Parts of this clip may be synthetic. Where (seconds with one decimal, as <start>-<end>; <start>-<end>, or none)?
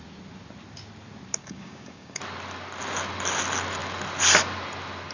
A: 1.4-2.2